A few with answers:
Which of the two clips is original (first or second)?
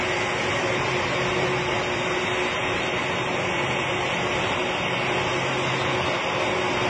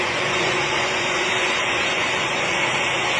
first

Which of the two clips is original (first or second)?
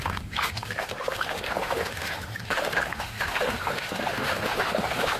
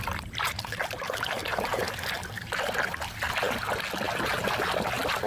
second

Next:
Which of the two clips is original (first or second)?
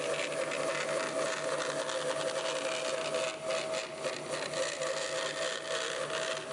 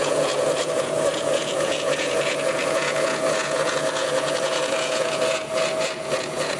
first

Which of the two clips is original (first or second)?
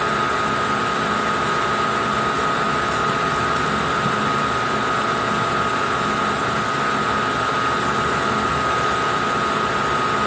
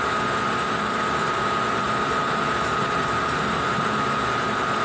first